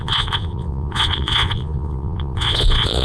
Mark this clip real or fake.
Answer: fake